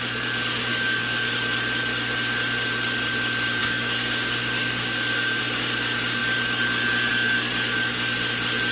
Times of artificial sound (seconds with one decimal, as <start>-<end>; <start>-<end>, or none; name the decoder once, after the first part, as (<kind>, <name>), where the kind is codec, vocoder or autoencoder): 0.7-1.3 (codec, DAC); 3.6-5.4